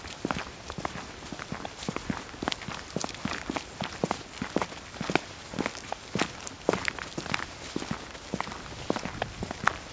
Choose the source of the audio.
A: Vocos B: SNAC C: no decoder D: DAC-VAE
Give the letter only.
C